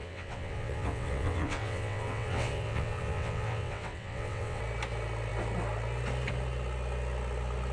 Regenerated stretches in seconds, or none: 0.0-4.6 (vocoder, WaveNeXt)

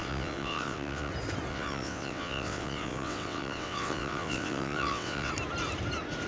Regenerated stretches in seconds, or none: 0.0-1.1 (vocoder, WaveNeXt); 1.5-5.3

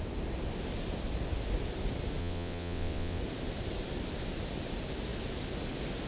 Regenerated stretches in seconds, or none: 2.2-3.2 (vocoder, WaveNeXt)

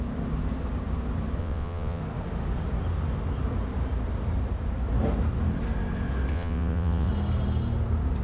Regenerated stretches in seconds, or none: 1.4-2.0 (vocoder, WaveNeXt); 6.3-7.1

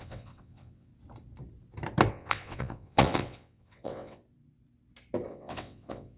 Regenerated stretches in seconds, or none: 0.0-0.9 (vocoder, WaveNeXt); 2.1-4.2; 5.3-6.2

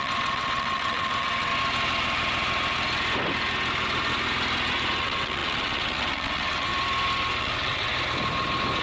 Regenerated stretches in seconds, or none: 0.0-1.5 (vocoder, WaveNeXt); 5.0-6.7; 7.4-7.9

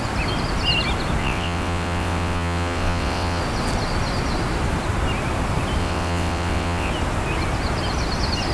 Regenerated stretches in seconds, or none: 1.2-3.4 (vocoder, WaveNeXt); 5.8-6.9